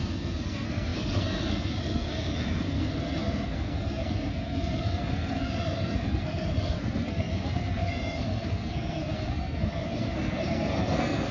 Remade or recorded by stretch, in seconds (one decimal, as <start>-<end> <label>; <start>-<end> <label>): 0.0-11.3 remade